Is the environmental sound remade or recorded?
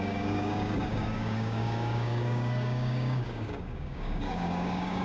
remade